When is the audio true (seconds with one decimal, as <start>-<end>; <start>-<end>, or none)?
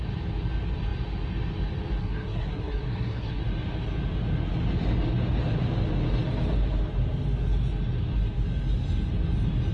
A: 0.0-2.0; 3.4-9.7